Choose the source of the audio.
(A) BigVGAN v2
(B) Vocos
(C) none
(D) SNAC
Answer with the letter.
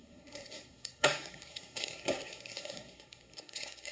D